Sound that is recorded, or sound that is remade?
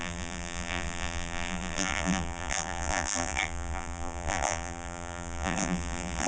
remade